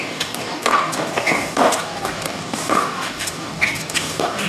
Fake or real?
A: fake